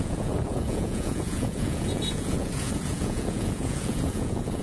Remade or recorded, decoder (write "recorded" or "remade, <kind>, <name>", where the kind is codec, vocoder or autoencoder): remade, vocoder, Vocos